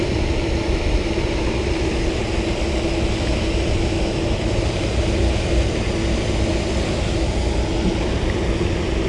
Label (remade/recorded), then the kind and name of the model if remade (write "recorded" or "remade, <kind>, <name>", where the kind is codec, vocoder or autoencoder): recorded